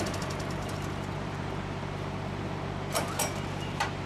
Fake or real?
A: fake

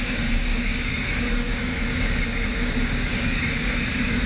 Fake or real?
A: fake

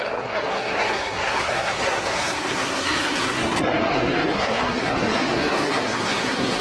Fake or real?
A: fake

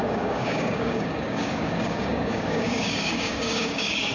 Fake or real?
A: fake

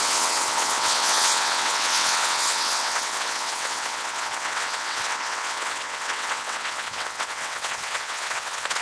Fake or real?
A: fake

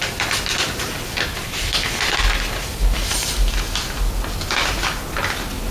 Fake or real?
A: real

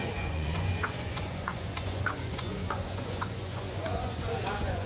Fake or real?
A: fake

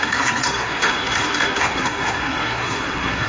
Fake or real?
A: fake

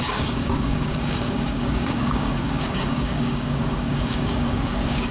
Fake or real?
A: fake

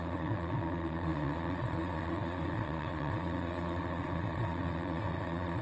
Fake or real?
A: fake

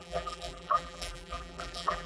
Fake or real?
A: fake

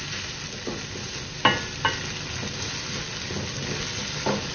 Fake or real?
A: real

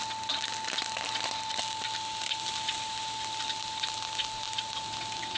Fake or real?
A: real